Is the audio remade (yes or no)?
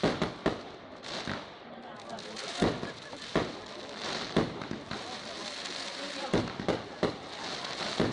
no